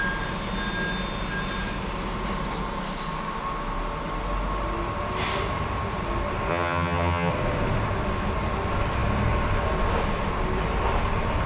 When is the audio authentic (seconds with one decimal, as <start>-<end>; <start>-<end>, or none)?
0.0-6.5; 7.3-11.5